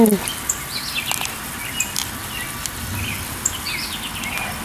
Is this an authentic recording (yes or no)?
yes